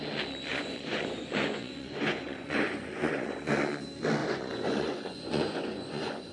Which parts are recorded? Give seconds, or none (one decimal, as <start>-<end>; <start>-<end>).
0.0-0.5; 3.5-4.2